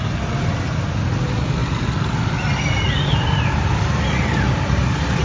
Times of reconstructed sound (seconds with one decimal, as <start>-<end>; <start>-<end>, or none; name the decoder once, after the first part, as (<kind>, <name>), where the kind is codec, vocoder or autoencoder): none